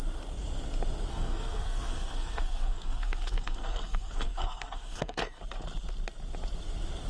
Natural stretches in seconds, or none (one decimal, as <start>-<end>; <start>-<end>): 0.0-1.1; 5.4-7.1